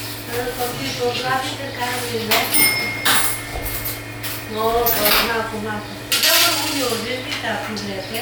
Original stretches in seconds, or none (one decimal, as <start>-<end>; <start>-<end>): 0.0-8.2